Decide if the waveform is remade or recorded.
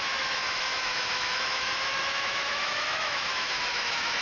remade